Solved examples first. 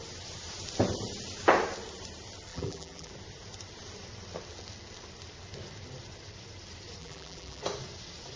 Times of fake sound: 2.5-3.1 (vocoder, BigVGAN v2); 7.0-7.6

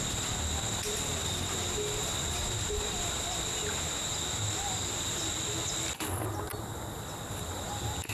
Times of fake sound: none